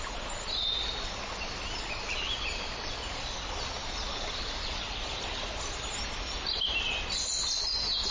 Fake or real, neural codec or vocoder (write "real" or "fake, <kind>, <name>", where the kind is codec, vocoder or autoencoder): real